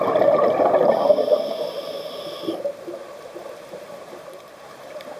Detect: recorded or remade remade